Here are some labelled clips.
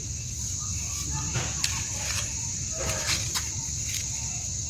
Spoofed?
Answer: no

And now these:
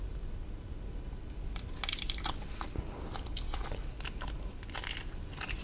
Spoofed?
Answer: no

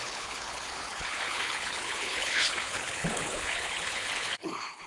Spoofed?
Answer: yes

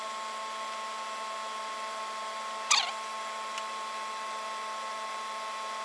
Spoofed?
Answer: no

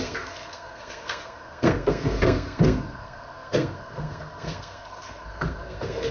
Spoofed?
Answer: yes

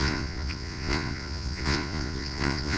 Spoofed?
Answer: yes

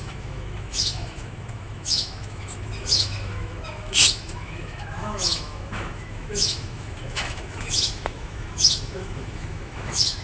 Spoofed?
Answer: yes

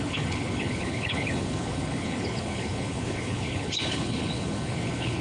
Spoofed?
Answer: yes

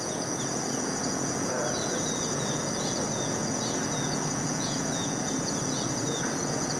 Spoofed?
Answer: yes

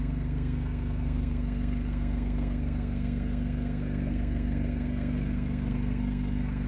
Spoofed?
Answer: yes